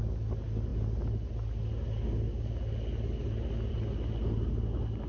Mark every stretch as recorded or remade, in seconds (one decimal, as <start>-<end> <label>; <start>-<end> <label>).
0.0-5.1 recorded